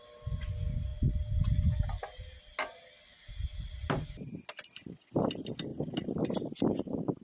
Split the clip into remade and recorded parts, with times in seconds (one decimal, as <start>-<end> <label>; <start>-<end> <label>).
0.0-7.2 recorded